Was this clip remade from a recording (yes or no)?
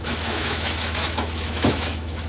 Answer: yes